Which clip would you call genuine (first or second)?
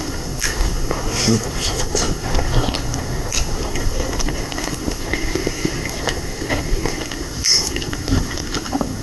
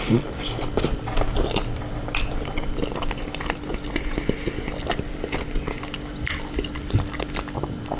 second